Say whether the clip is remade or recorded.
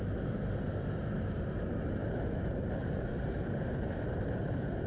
remade